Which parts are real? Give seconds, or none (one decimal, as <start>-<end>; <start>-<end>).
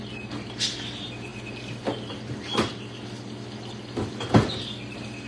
0.0-5.3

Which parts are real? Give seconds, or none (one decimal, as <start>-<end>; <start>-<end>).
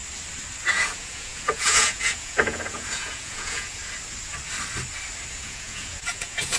0.0-0.7; 3.8-5.3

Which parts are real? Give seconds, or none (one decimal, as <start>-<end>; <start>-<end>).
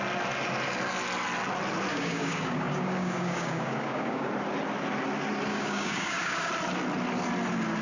0.0-1.9; 4.3-5.5; 6.5-7.8